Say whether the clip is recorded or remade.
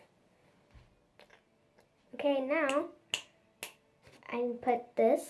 recorded